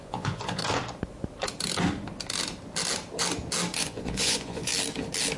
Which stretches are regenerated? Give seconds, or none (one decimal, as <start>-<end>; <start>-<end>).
0.0-0.6; 3.8-4.7